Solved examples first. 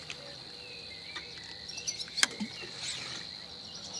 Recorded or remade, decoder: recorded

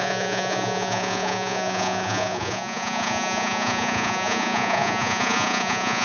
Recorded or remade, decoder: remade, vocoder, Vocos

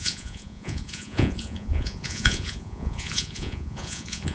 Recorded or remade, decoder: remade, vocoder, Vocos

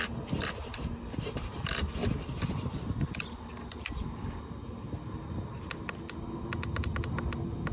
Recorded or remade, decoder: recorded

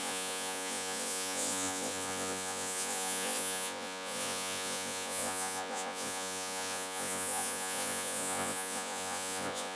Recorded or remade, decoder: remade, vocoder, Vocos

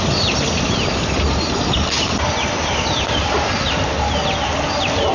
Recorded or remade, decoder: recorded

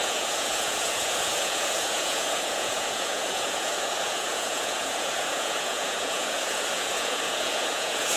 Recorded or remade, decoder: remade, vocoder, Vocos